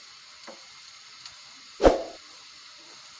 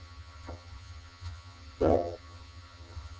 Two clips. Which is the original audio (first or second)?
first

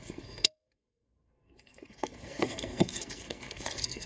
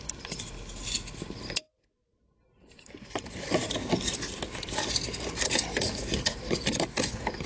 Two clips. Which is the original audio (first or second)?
second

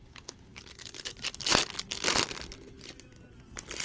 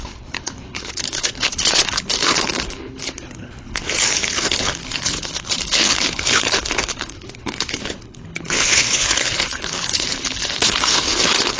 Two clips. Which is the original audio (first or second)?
first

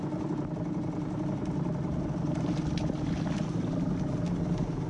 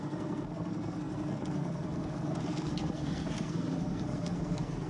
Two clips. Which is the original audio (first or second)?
first